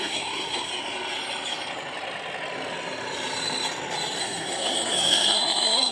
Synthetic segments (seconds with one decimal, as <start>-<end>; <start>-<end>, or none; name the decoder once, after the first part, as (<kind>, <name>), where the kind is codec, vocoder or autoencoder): 0.0-0.7 (codec, SNAC); 4.2-5.9